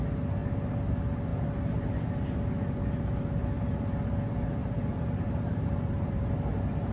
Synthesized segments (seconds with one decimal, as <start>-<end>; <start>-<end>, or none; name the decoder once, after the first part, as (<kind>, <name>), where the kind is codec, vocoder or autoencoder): 4.6-6.2 (vocoder, BigVGAN v2)